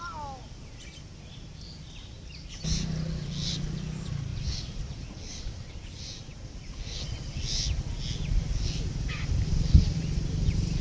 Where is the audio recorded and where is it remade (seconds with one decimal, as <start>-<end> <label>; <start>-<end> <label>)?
0.0-10.8 recorded